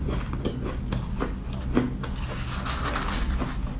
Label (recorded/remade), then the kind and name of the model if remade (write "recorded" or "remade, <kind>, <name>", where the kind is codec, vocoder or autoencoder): recorded